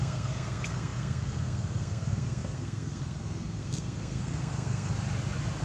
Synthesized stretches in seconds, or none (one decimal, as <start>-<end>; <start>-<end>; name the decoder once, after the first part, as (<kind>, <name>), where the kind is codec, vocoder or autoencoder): 0.0-4.9 (codec, SNAC)